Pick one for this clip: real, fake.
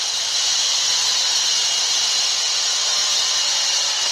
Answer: real